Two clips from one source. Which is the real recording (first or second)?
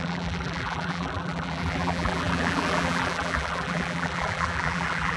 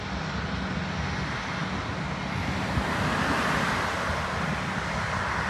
second